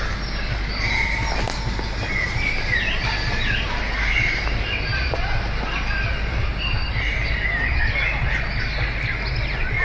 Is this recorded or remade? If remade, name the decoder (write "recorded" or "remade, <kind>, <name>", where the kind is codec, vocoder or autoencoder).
recorded